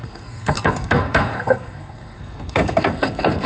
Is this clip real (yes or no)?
no